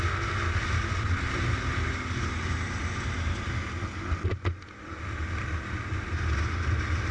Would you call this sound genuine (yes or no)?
yes